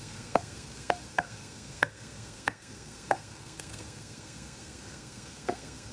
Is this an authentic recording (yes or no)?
no